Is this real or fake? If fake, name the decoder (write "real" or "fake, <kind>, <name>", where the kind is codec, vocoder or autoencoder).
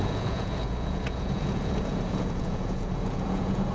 fake, vocoder, Vocos